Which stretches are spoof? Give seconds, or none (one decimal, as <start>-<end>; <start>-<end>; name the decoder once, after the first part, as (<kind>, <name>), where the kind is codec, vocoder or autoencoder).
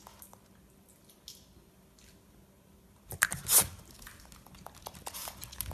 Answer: none